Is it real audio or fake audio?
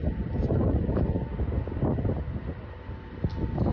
real